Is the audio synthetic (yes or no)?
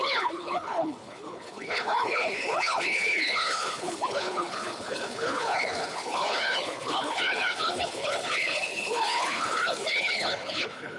yes